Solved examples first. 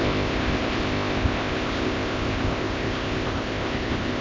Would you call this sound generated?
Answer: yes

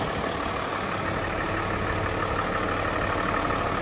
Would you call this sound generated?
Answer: no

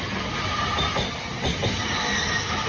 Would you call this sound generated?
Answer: no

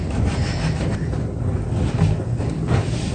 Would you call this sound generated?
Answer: no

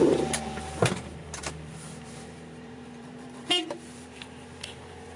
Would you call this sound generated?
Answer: yes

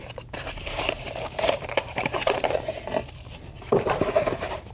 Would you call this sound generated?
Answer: yes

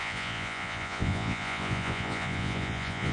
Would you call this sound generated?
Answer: yes